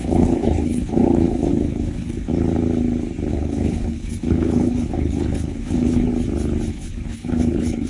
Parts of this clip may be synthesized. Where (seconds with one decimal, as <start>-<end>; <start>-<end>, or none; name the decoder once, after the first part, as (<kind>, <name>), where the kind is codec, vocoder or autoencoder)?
0.0-2.3 (codec, HILCodec); 3.3-6.1; 6.7-7.9